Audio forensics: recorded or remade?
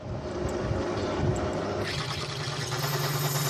recorded